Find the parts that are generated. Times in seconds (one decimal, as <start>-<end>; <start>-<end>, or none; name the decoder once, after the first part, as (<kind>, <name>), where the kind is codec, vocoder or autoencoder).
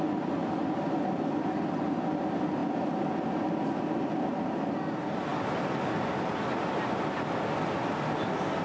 none